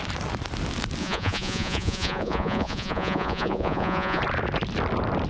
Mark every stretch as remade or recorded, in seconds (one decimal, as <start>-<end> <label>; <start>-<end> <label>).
0.0-1.0 recorded; 1.0-4.2 remade; 4.2-5.3 recorded